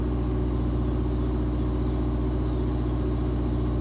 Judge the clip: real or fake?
real